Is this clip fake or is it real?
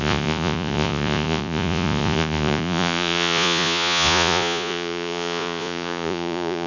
fake